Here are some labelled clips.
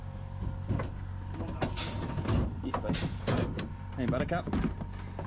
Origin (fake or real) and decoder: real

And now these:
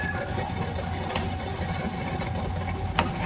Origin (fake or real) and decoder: real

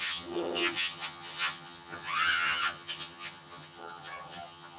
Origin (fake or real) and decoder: fake, vocoder, HiFi-GAN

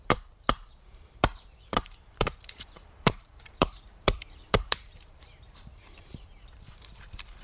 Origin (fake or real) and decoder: fake, vocoder, BigVGAN v2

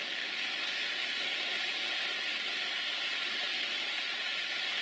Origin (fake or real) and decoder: real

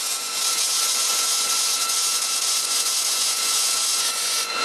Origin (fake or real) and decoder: fake, vocoder, Vocos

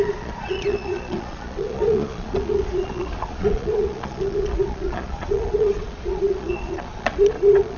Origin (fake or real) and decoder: fake, vocoder, Vocos